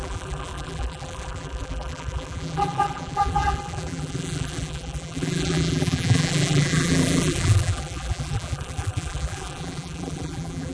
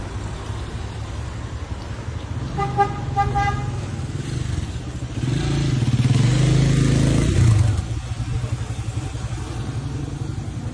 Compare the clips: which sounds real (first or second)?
second